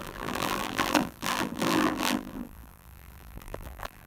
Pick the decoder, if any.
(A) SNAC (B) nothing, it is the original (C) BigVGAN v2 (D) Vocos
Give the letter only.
C